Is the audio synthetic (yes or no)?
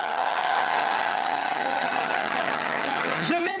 yes